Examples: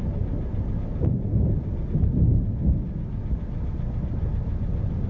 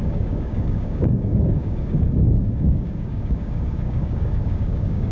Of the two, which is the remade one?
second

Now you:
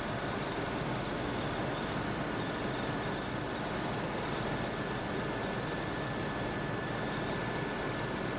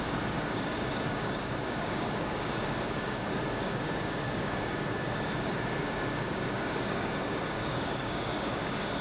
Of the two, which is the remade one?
second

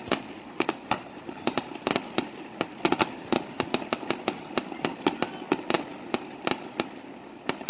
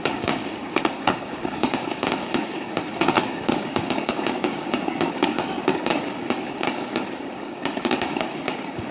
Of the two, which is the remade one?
second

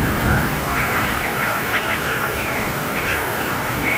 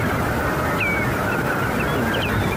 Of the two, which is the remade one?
first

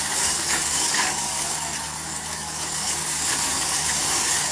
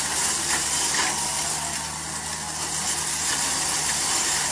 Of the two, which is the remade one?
first